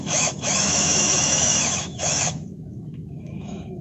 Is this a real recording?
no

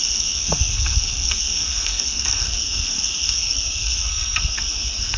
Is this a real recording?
no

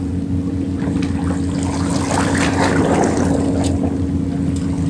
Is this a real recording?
yes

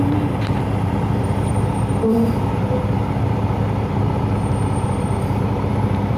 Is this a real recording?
no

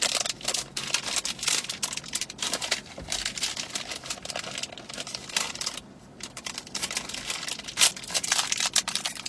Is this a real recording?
no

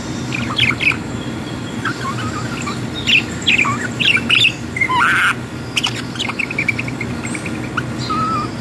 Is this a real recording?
yes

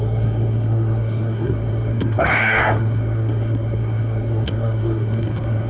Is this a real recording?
no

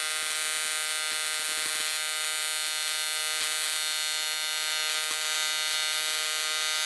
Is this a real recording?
yes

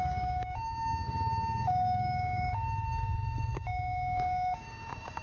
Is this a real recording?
no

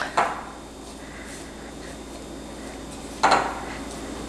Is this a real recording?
yes